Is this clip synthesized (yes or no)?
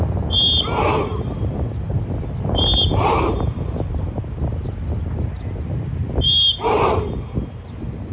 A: no